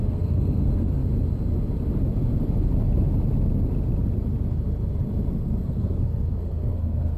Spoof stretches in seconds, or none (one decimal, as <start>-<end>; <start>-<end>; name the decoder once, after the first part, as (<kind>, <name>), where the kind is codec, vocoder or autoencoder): 0.0-1.0 (codec, SNAC); 5.3-7.2